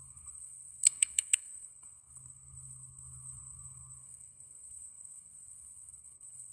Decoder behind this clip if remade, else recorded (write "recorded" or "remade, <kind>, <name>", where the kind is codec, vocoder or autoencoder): remade, codec, SNAC